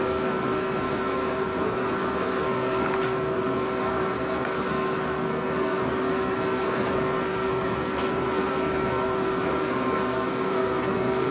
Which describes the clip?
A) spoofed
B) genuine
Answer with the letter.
A